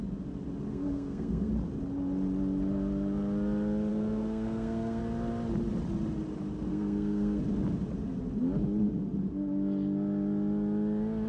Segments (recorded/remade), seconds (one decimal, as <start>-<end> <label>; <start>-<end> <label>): 0.0-0.7 recorded; 0.7-1.5 remade; 1.5-3.9 recorded; 3.9-5.0 remade; 5.0-6.7 recorded; 6.7-7.4 remade; 7.4-11.3 recorded